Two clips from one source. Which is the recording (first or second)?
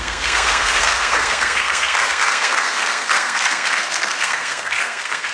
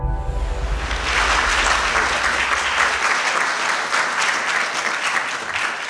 second